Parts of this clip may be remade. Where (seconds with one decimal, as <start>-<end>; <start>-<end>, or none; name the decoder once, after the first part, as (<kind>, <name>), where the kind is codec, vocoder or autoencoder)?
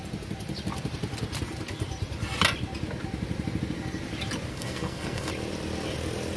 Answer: 4.5-5.3 (codec, SNAC)